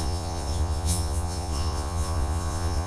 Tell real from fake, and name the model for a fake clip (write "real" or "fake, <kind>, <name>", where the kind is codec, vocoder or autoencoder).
fake, vocoder, Vocos